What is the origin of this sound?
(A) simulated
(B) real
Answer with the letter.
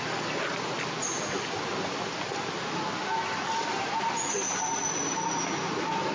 B